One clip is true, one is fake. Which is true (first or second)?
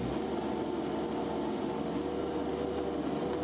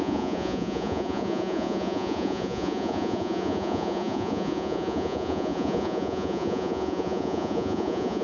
first